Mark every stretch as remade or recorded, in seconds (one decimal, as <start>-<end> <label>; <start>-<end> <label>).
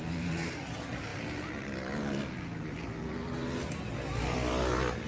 0.0-5.1 recorded